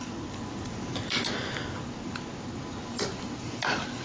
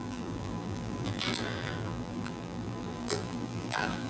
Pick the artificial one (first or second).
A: second